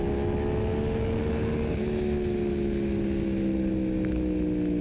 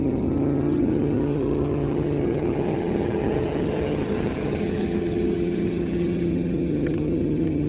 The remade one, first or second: second